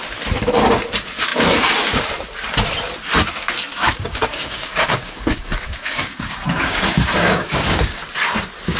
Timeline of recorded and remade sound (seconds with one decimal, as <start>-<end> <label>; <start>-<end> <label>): 0.0-3.7 recorded; 3.7-8.0 remade; 8.0-8.8 recorded